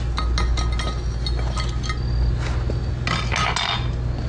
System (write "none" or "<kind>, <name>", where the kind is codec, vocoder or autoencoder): none